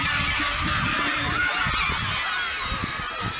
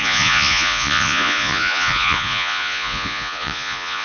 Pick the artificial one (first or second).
second